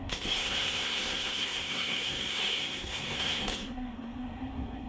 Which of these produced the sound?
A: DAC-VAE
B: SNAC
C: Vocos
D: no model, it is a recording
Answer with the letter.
B